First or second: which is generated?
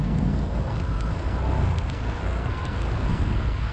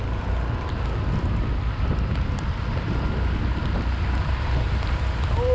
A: first